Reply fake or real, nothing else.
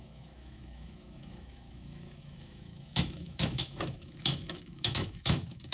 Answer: fake